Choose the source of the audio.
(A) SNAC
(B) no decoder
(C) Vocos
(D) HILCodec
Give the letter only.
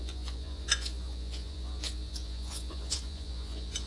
C